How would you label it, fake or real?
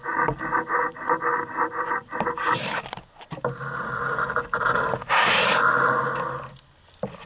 real